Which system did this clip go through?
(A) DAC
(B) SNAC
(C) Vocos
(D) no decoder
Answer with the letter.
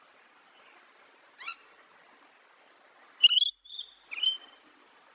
D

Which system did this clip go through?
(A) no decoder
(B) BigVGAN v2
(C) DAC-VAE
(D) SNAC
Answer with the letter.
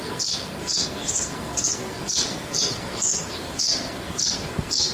D